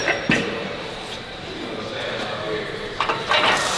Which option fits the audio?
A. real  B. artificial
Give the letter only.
B